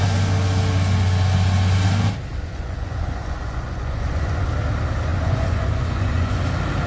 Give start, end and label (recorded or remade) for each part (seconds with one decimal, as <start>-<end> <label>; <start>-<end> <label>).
0.0-2.3 recorded; 2.3-4.5 remade; 4.5-5.1 recorded; 5.1-6.4 remade; 6.4-6.9 recorded